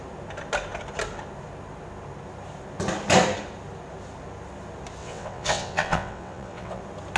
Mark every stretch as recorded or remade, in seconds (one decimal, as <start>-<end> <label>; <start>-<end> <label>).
0.0-5.0 recorded; 5.0-6.8 remade; 6.8-7.2 recorded